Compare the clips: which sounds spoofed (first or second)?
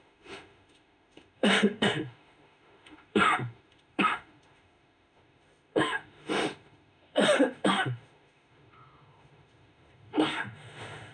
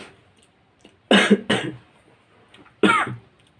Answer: first